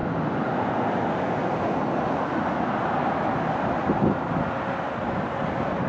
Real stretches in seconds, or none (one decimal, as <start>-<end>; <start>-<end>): 0.0-5.9

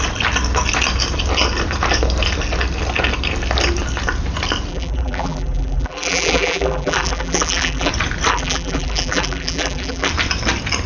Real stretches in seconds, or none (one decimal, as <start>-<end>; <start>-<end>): 0.0-4.7; 7.9-8.3; 10.1-10.9

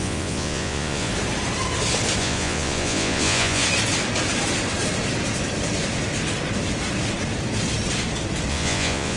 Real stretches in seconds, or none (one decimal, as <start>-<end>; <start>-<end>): 1.1-2.2; 3.6-8.5

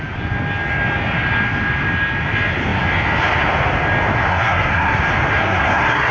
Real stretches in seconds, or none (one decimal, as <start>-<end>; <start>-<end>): 0.0-4.3; 5.0-5.4

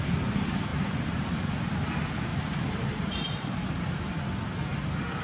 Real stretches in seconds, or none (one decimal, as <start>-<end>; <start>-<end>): 0.0-0.7; 1.3-2.3; 4.1-5.2

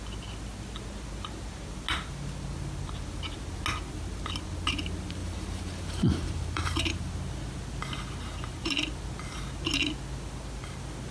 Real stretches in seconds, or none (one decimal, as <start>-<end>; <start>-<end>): 0.0-5.2; 7.1-11.1

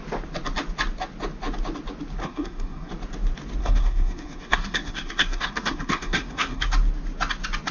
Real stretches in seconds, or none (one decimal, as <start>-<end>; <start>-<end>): 0.0-2.2; 2.9-3.6; 6.7-7.7